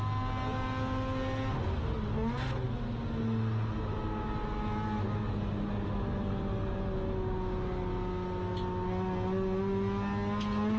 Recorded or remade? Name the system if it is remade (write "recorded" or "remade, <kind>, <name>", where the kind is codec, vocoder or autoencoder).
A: recorded